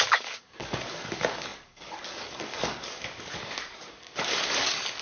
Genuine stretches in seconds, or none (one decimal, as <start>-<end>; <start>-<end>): none